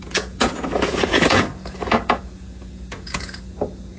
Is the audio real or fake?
fake